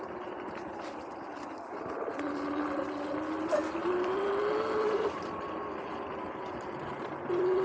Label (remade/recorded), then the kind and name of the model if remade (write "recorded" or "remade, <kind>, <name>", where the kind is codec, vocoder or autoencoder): recorded